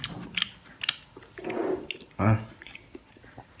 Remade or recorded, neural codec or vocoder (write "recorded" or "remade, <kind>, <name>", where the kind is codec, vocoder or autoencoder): recorded